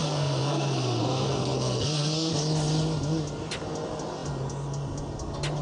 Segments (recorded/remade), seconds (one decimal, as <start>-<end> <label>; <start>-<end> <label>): 0.0-2.3 remade; 2.3-5.6 recorded